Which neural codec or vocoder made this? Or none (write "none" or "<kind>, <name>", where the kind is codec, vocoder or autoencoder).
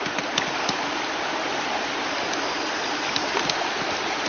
none